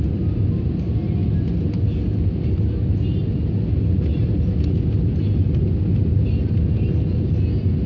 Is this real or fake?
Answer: real